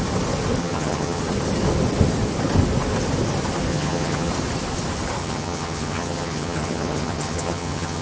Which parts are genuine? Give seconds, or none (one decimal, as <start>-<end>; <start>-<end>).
0.0-0.6; 1.2-3.7; 4.3-5.2